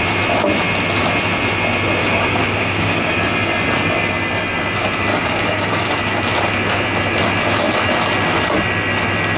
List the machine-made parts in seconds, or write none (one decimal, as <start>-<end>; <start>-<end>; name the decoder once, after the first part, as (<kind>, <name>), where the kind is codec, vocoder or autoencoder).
2.0-3.1 (codec, DAC); 5.1-5.9